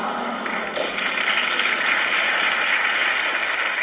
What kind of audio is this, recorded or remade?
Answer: recorded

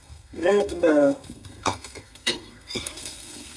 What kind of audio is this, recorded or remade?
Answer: remade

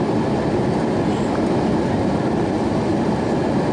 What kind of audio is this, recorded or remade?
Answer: recorded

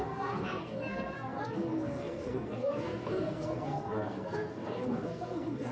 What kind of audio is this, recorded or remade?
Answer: remade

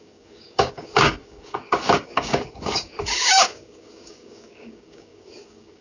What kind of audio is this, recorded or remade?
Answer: remade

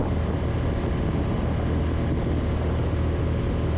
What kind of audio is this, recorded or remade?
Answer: recorded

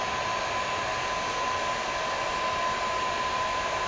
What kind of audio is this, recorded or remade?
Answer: recorded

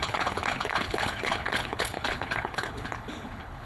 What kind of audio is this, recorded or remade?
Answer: remade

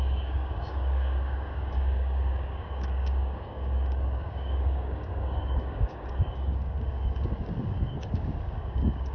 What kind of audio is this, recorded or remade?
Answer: remade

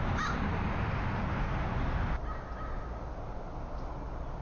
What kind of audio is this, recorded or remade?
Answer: recorded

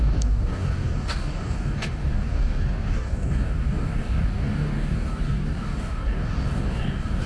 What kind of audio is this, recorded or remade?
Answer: remade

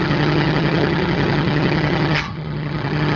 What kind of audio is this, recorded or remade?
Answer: remade